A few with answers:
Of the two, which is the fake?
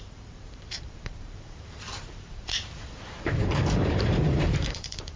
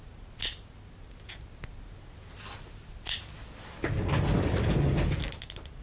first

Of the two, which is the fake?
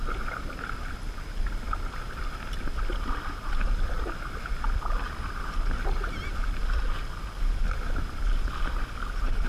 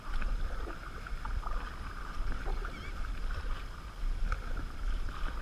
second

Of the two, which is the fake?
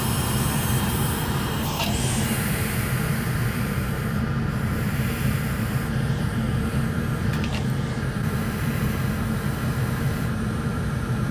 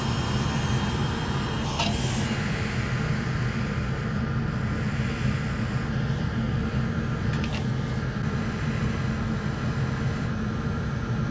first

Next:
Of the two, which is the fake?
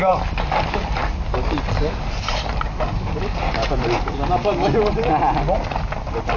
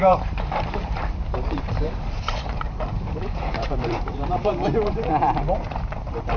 second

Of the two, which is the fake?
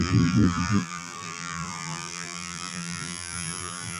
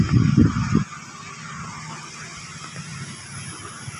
first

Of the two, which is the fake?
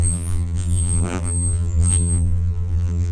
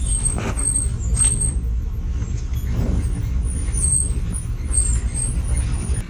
first